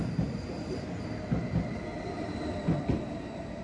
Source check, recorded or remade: recorded